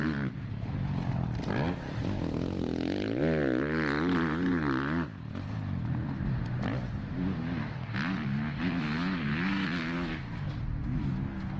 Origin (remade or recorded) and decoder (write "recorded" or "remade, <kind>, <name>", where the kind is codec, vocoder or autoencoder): recorded